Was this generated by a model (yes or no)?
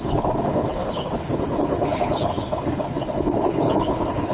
yes